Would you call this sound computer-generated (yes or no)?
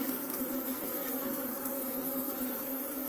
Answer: yes